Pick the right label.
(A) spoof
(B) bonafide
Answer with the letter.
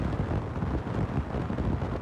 B